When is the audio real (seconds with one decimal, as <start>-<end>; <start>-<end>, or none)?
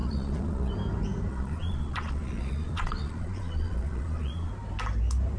0.7-1.3; 4.5-5.4